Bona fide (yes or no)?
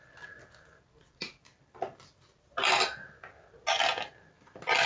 yes